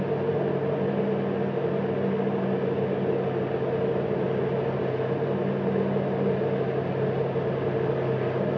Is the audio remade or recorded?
recorded